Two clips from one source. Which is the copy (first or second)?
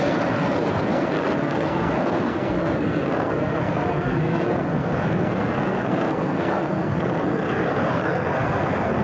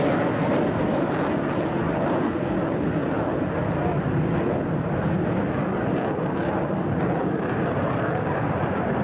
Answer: first